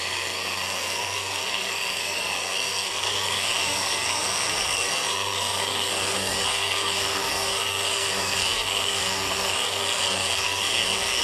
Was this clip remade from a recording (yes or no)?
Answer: yes